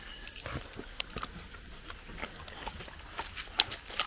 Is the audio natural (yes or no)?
yes